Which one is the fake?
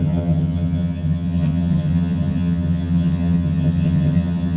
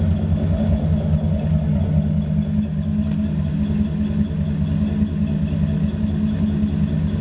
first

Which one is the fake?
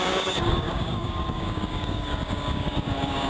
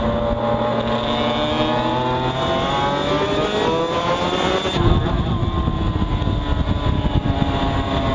first